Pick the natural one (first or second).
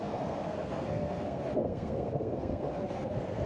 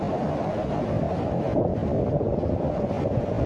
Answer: second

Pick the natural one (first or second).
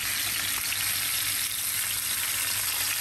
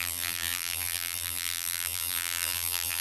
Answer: first